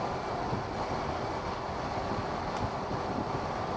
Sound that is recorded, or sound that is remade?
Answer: recorded